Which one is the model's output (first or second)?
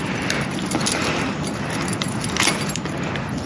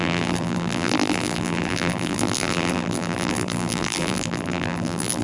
second